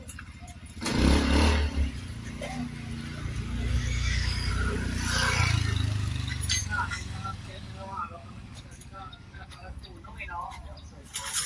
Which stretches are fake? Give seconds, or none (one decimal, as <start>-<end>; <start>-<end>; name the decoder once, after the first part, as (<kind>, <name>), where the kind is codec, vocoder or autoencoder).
3.7-4.5 (codec, DAC); 6.6-9.8